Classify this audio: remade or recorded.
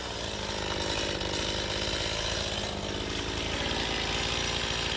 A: recorded